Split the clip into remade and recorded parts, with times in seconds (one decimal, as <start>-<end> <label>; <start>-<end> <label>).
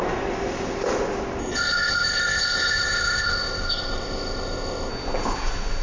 0.0-1.4 recorded; 1.4-4.9 remade; 4.9-5.8 recorded